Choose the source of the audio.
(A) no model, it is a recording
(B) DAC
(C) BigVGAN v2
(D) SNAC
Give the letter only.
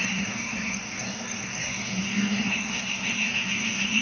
D